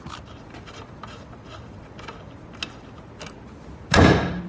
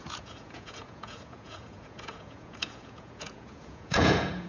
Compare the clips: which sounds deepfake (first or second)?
second